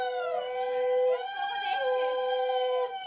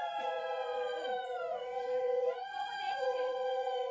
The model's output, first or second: second